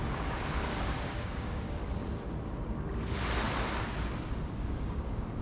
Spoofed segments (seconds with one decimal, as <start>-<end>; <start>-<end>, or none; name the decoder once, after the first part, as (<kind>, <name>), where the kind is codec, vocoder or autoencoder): 0.0-1.8 (codec, DAC); 4.6-5.4